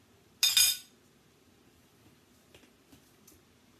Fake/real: real